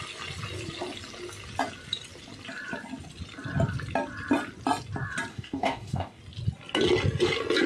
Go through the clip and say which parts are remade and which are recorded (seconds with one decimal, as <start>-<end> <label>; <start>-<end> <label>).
0.0-5.3 recorded; 5.3-6.2 remade; 6.2-7.7 recorded